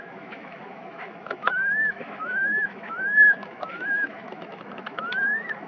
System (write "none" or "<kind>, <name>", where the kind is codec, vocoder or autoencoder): autoencoder, DAC-VAE